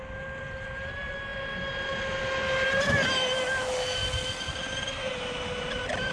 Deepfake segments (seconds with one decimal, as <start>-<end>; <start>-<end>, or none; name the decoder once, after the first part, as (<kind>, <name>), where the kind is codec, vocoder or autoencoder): none